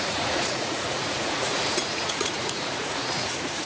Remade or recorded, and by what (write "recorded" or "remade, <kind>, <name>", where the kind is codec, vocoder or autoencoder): remade, vocoder, Vocos